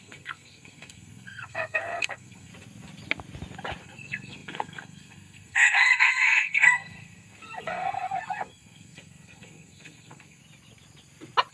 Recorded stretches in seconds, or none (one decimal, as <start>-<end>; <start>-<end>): 2.5-3.8; 10.4-11.5